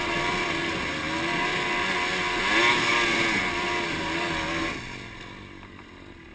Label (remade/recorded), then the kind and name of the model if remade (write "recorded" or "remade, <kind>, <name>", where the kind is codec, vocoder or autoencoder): recorded